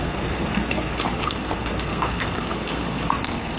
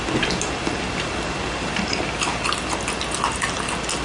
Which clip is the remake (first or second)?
first